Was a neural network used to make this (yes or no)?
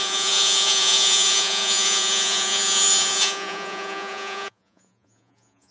yes